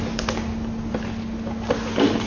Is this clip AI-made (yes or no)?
no